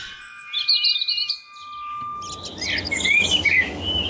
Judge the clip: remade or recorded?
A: recorded